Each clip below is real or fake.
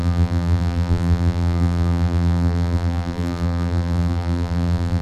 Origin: fake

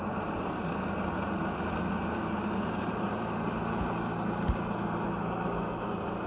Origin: real